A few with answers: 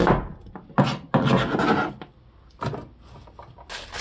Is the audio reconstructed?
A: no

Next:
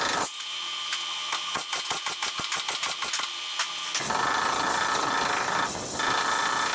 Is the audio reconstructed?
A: no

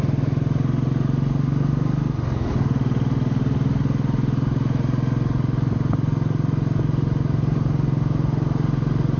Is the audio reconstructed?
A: no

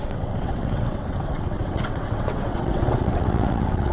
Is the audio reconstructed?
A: yes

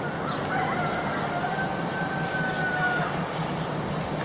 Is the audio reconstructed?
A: no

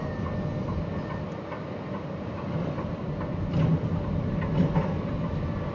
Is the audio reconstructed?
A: no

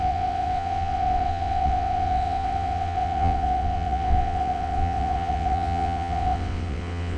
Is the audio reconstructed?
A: yes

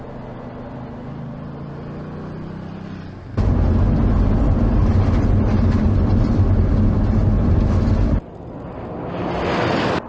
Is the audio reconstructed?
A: no